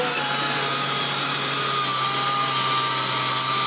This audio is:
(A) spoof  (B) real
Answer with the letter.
B